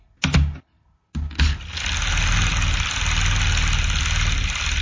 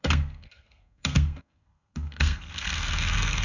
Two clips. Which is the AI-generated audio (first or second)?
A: second